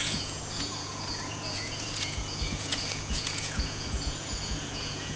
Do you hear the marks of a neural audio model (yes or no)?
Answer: yes